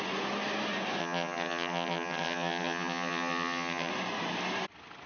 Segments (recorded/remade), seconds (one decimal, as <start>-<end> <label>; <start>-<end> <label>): 0.0-1.0 recorded; 1.0-3.9 remade; 3.9-5.1 recorded